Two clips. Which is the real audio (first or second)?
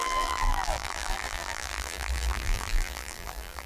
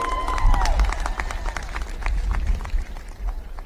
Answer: second